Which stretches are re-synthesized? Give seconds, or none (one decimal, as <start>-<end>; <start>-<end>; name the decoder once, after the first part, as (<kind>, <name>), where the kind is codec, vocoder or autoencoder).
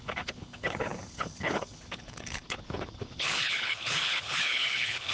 0.0-5.1 (codec, HILCodec)